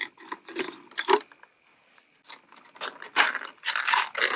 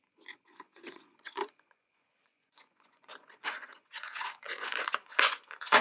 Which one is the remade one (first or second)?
second